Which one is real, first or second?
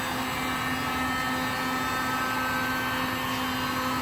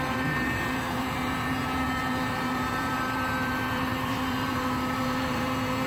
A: first